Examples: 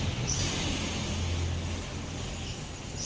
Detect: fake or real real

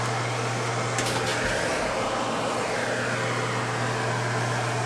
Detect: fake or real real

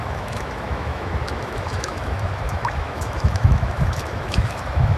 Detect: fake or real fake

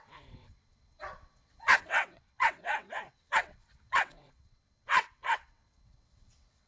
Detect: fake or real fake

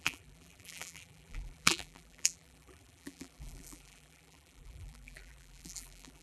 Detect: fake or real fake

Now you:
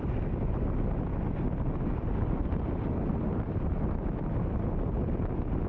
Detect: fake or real real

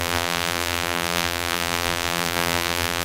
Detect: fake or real fake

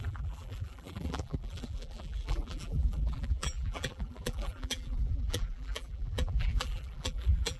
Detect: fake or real fake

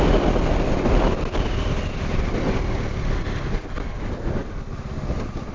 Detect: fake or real real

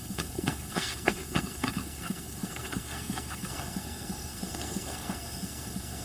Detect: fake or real fake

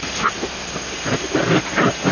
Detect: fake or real real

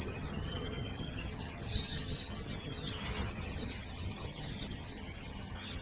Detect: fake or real fake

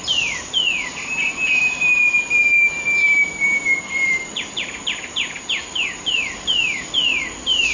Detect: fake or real fake